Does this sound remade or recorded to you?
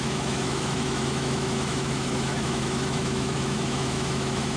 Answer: remade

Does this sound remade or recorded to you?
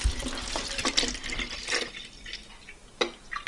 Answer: recorded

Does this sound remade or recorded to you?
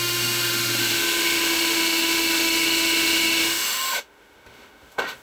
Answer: remade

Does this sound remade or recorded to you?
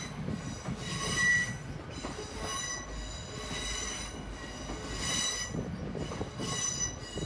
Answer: recorded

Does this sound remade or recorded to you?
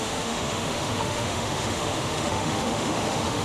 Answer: remade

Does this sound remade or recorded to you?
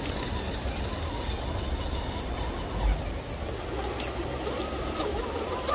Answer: recorded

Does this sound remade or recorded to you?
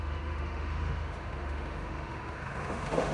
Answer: remade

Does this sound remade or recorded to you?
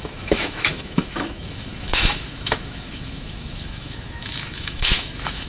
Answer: remade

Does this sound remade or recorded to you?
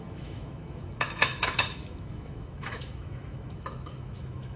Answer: remade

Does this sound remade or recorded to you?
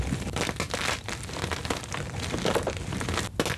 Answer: recorded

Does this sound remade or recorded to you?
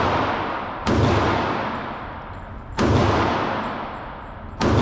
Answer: recorded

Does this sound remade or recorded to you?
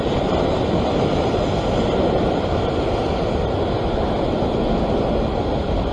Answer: recorded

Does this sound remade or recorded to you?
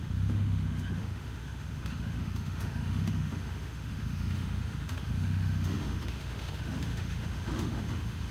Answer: remade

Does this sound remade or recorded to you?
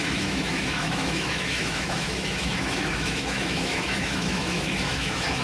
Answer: remade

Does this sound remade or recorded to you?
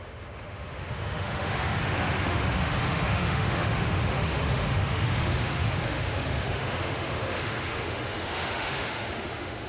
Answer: remade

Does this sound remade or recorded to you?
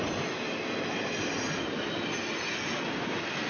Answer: recorded